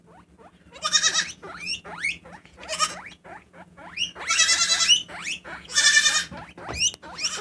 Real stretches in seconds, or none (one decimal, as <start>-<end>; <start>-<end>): 0.0-1.4; 4.0-5.2; 5.8-7.4